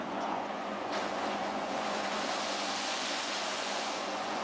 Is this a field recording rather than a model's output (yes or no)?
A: no